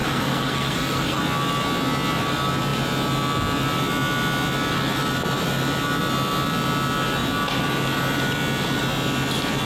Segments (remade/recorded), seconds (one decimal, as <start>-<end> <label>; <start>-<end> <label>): 0.0-1.2 remade; 1.2-9.6 recorded